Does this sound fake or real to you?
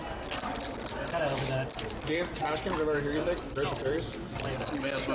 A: real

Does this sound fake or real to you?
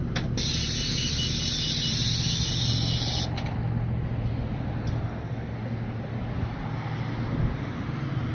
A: real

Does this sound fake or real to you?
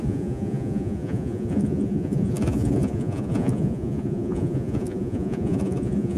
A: fake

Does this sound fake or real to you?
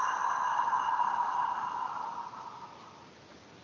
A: real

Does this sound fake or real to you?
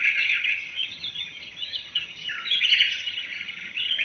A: fake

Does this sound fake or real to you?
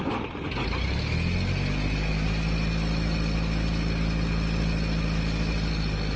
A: real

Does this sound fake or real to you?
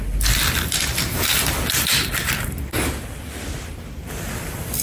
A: real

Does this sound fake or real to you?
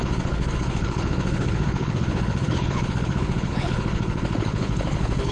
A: fake